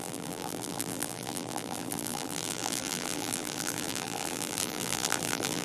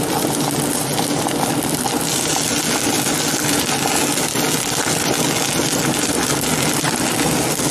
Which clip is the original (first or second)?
second